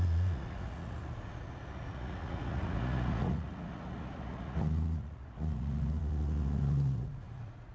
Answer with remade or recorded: remade